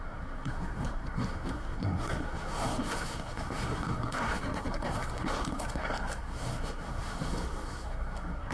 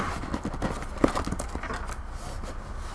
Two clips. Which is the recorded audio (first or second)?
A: second